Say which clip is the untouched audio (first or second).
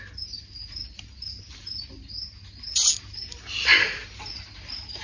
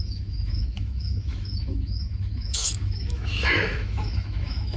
first